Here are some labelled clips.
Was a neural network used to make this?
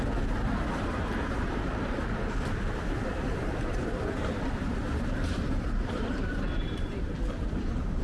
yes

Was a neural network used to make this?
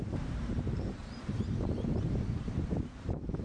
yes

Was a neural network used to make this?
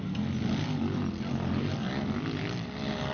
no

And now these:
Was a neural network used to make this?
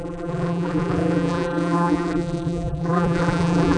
yes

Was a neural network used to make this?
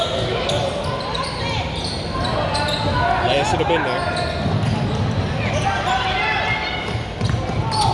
no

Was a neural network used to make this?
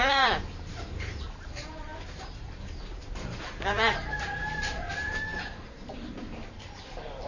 yes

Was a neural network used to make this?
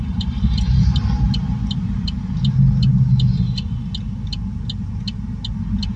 no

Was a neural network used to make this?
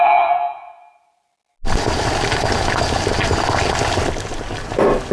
no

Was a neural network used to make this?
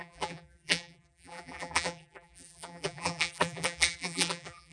yes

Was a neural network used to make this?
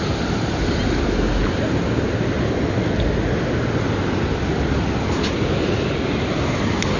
no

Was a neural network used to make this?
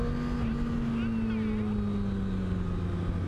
no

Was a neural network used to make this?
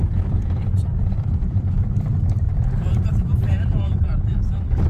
yes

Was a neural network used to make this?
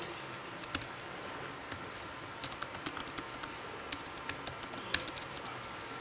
no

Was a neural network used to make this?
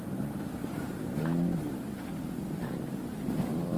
yes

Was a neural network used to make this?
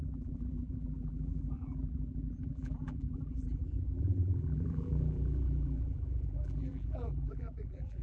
yes